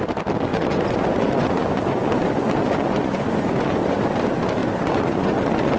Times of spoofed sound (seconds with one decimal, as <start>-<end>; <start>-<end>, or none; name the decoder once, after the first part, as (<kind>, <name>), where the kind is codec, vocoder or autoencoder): 0.5-4.0 (vocoder, Vocos); 4.6-5.8